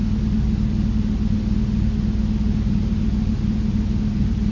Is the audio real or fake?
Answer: real